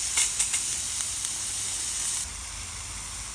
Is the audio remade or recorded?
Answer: recorded